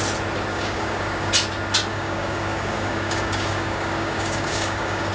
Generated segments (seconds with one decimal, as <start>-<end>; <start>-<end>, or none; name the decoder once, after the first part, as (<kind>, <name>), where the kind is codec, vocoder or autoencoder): 0.5-1.3 (codec, DAC); 1.9-5.1